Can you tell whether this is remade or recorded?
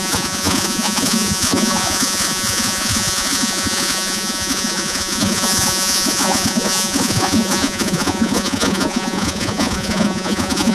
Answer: remade